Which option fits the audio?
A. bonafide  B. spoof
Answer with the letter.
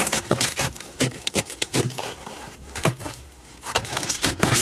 B